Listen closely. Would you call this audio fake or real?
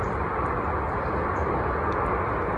real